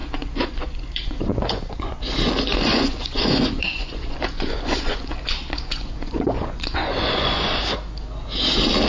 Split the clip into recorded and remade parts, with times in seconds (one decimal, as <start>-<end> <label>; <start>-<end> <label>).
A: 0.0-2.0 remade; 2.0-2.5 recorded; 2.5-7.6 remade; 7.6-8.9 recorded

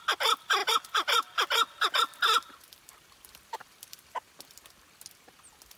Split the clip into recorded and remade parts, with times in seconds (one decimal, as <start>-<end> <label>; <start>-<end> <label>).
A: 0.0-0.6 recorded; 0.6-4.1 remade; 4.1-5.8 recorded

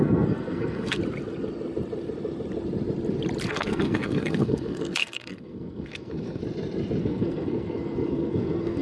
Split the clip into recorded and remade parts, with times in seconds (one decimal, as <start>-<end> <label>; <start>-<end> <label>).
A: 0.0-1.0 remade; 1.0-3.5 recorded; 3.5-6.4 remade; 6.4-7.0 recorded; 7.0-8.8 remade

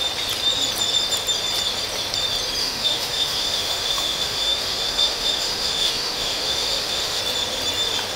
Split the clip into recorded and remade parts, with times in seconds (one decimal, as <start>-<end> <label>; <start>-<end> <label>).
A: 0.0-2.6 recorded; 2.6-7.2 remade; 7.2-8.2 recorded

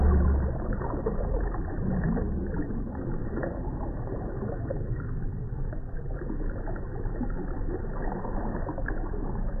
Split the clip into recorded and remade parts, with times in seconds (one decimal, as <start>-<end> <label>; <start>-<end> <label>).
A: 0.0-9.6 recorded

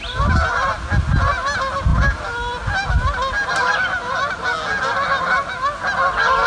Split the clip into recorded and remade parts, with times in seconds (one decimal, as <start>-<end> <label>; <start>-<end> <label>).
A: 0.0-6.5 recorded

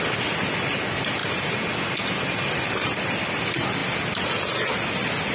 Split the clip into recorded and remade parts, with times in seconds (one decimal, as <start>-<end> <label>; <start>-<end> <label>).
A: 0.0-5.3 recorded

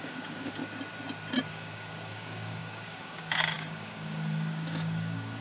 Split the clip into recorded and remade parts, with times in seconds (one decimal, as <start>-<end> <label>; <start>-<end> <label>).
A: 0.0-0.6 remade; 0.6-1.5 recorded; 1.5-5.4 remade